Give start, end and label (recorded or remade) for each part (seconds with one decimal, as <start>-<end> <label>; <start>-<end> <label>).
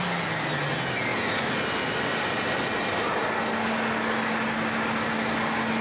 0.0-5.8 recorded